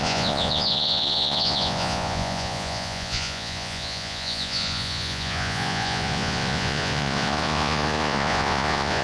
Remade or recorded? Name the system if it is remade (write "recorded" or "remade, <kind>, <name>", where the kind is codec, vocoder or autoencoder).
remade, vocoder, Vocos